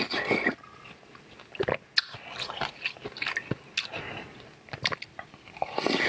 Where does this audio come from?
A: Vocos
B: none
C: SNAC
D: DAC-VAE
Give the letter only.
B